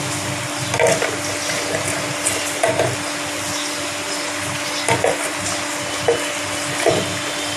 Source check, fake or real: real